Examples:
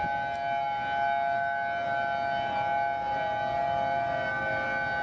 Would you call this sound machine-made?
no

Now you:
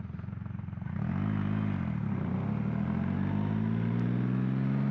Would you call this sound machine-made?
no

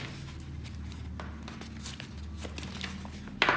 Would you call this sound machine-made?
no